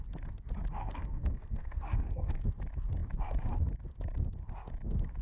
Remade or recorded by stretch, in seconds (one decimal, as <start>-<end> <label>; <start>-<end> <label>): 0.0-0.8 recorded; 0.8-2.4 remade; 2.4-5.2 recorded